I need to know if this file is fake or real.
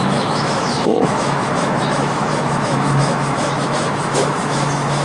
fake